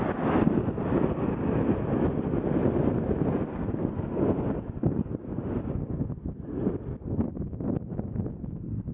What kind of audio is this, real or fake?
real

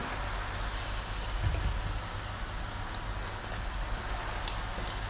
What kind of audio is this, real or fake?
real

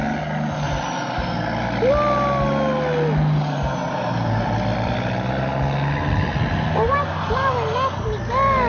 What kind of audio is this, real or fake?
real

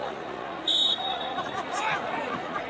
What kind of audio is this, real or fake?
fake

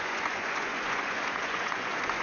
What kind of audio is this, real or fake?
fake